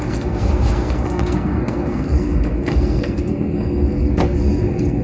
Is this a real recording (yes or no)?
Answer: no